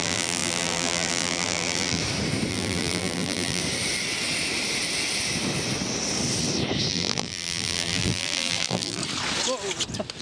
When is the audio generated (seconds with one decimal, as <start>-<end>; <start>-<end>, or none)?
0.0-2.0; 2.5-3.6; 6.9-9.0